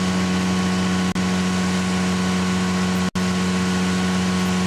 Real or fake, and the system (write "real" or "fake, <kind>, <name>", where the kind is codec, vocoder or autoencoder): real